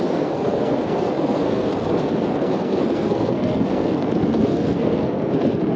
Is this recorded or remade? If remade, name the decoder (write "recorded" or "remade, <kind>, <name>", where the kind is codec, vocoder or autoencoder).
remade, codec, SNAC